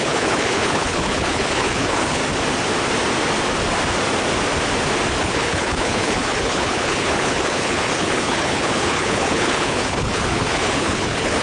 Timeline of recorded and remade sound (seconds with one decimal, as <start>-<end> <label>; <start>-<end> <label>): 0.0-2.2 remade; 2.2-5.2 recorded; 5.2-11.4 remade